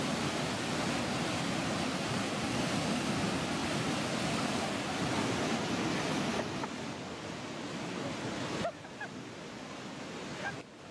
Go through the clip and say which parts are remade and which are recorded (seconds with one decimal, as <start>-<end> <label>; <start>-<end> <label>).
0.0-10.9 recorded